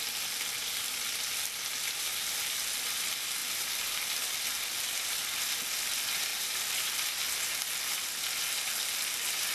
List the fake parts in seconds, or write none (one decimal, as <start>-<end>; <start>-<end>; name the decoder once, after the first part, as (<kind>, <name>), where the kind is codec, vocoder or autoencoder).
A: 6.3-7.0 (vocoder, BigVGAN v2)